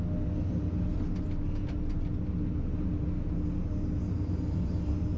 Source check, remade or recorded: recorded